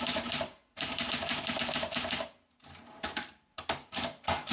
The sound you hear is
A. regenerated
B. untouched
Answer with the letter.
A